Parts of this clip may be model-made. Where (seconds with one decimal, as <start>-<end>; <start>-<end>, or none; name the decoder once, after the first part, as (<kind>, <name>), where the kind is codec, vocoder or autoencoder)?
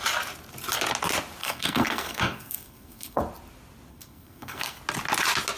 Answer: 1.4-3.2 (codec, SNAC); 3.9-4.8